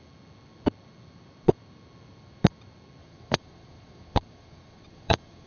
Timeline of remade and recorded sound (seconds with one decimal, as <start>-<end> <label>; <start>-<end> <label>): 0.0-3.0 recorded; 3.0-5.5 remade